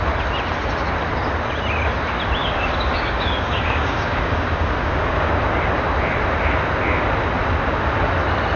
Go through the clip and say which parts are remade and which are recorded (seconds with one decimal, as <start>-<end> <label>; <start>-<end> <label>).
0.0-2.4 recorded; 2.4-5.3 remade; 5.3-8.6 recorded